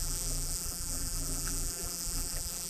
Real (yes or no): no